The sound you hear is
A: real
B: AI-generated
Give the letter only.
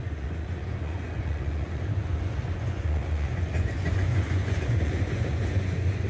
B